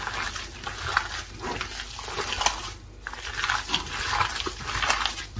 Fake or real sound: real